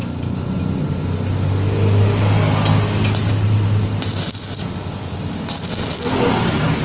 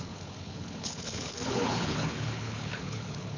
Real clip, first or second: first